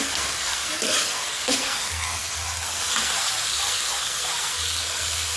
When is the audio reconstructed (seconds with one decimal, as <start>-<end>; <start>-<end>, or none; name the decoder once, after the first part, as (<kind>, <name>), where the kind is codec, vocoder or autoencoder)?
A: 0.0-5.4 (codec, SNAC)